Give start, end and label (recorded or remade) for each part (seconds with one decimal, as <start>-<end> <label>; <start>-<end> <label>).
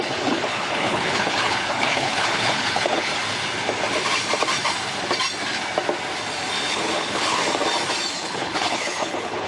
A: 0.0-3.1 remade; 3.1-6.7 recorded; 6.7-7.4 remade; 7.4-8.1 recorded; 8.1-9.5 remade